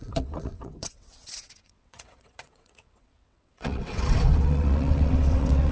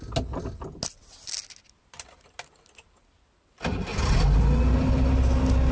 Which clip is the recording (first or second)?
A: second